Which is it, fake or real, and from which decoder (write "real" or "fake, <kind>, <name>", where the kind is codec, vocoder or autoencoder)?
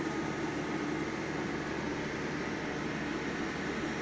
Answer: real